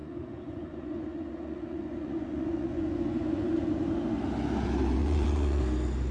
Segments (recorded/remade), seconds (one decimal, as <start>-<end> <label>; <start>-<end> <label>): 0.0-3.5 remade; 3.5-5.0 recorded; 5.0-5.6 remade; 5.6-6.1 recorded